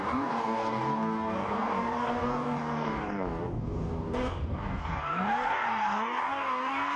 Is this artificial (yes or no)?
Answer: yes